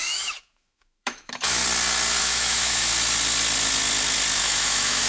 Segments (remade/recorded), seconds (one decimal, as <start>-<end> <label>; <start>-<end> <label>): 0.0-1.6 remade; 1.6-2.2 recorded; 2.2-2.9 remade; 2.9-4.4 recorded; 4.4-5.1 remade